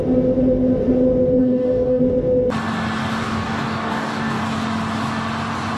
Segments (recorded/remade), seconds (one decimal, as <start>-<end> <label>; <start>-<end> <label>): 0.0-1.4 recorded; 1.4-2.0 remade; 2.0-3.2 recorded; 3.2-4.4 remade; 4.4-5.8 recorded

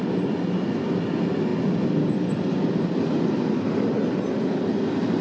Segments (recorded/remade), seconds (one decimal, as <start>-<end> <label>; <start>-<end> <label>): 0.0-5.2 recorded

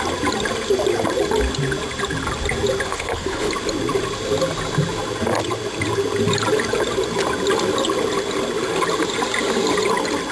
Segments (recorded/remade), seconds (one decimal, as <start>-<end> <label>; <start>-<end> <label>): 0.0-2.9 recorded; 2.9-3.5 remade; 3.5-10.3 recorded

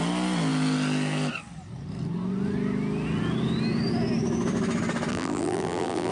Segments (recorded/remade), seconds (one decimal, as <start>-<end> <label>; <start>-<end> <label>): 0.0-5.1 recorded; 5.1-6.1 remade

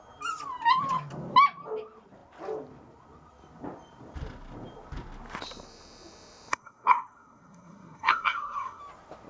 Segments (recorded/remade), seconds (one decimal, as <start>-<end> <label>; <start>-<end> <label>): 0.0-6.5 recorded; 6.5-8.8 remade; 8.8-9.3 recorded

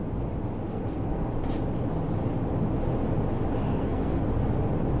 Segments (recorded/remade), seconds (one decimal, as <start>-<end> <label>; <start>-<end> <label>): 0.0-0.7 recorded; 0.7-1.3 remade; 1.3-3.7 recorded; 3.7-4.2 remade; 4.2-5.0 recorded

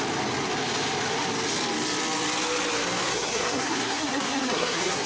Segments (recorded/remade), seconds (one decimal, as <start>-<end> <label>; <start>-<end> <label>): 0.0-3.1 recorded; 3.1-5.1 remade

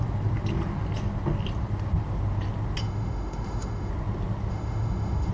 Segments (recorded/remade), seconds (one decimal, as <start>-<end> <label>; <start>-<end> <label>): 0.0-2.8 recorded; 2.8-3.9 remade; 3.9-4.5 recorded; 4.5-5.3 remade